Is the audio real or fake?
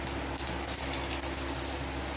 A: real